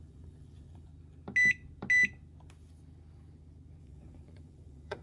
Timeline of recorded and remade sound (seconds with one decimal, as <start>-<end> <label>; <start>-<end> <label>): 0.0-0.9 remade; 0.9-3.8 recorded; 3.8-5.0 remade